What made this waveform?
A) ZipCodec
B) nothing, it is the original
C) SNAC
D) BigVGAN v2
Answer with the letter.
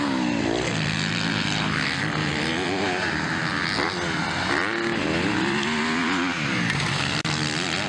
B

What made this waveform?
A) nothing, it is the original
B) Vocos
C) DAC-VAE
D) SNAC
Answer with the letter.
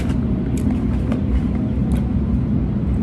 A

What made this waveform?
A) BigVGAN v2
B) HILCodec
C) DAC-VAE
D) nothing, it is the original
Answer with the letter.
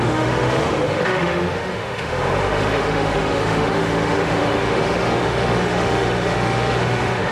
C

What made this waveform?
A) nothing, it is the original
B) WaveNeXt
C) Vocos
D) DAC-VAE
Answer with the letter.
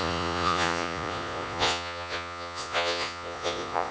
C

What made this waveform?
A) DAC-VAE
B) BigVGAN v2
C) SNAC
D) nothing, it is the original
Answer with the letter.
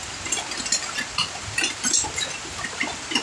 D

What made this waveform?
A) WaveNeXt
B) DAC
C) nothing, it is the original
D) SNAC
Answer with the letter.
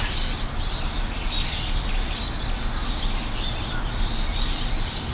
C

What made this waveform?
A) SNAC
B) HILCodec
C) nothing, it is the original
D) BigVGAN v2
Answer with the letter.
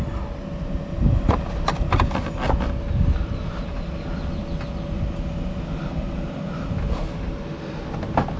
C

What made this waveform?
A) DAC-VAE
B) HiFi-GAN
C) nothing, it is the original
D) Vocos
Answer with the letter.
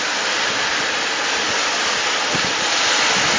C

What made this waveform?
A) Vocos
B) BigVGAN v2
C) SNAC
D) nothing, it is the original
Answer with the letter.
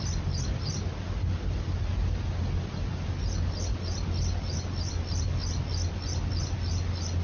D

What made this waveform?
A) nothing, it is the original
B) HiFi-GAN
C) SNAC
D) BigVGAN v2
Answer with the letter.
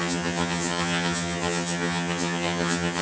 B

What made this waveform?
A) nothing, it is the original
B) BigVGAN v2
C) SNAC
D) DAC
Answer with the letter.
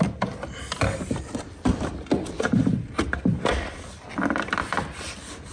B